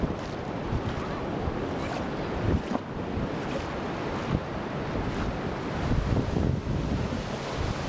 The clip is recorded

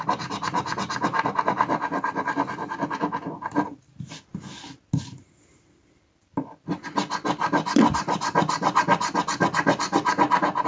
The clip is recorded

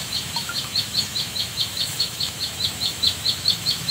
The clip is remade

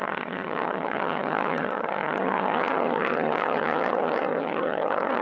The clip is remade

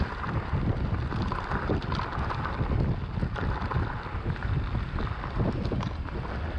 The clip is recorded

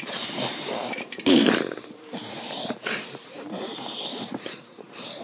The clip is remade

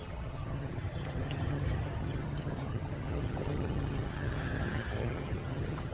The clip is remade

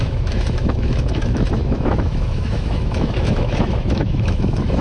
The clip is remade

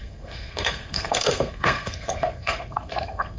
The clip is remade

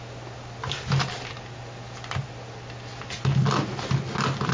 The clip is recorded